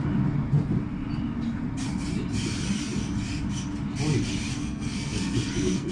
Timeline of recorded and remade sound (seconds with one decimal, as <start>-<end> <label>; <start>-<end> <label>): 0.0-4.5 recorded; 4.5-5.9 remade